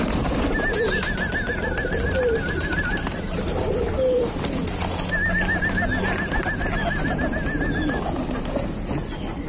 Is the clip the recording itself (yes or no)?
yes